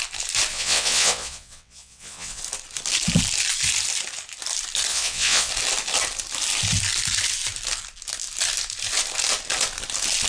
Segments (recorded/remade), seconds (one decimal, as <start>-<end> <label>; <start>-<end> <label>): 0.0-0.5 recorded; 0.5-2.4 remade; 2.4-4.9 recorded; 4.9-5.5 remade; 5.5-10.3 recorded